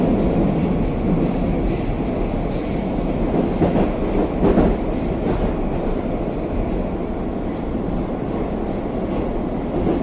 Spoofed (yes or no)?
no